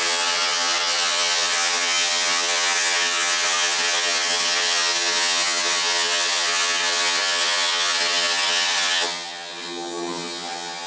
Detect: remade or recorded remade